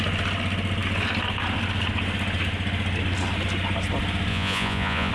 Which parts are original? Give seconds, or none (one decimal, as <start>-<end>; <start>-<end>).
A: 0.0-4.3